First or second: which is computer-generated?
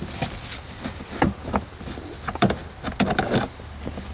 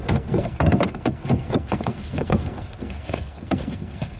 second